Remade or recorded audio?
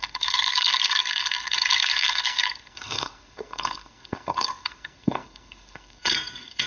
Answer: remade